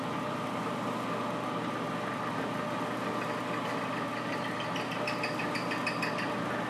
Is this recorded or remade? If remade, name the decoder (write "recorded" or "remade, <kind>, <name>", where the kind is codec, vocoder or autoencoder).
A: recorded